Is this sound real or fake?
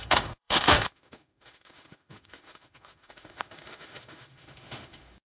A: fake